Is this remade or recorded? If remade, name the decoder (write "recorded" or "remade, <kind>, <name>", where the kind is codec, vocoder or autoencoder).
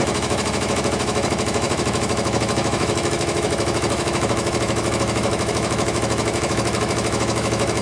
remade, autoencoder, DAC-VAE